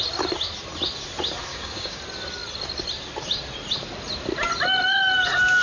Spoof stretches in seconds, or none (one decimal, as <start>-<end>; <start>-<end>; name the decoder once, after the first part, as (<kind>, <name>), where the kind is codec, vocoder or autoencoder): 1.5-2.0 (codec, DAC)